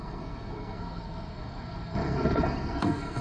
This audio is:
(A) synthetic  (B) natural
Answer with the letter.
A